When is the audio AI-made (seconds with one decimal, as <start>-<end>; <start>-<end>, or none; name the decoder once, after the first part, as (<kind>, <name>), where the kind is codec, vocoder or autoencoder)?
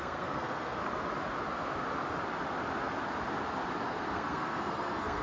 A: 0.0-0.8 (codec, SNAC); 3.9-5.2